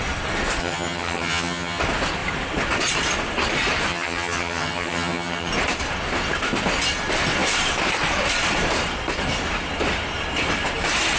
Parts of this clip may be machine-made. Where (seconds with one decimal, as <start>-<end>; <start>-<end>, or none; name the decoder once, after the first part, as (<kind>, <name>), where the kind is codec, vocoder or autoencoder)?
0.6-1.8 (vocoder, HiFi-GAN); 3.9-5.5